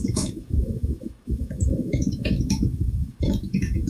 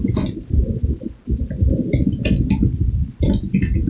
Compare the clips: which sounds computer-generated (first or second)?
first